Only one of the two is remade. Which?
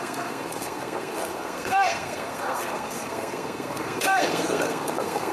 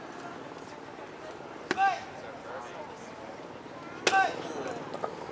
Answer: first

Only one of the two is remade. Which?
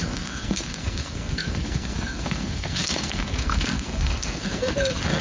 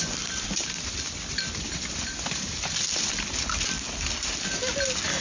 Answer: first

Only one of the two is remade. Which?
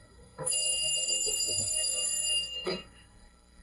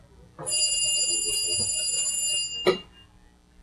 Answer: first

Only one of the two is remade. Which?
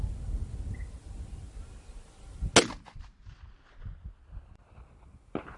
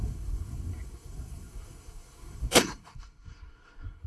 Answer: second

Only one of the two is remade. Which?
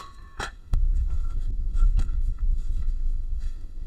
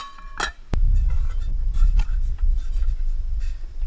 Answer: first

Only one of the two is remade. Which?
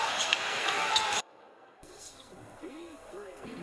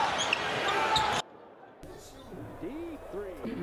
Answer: first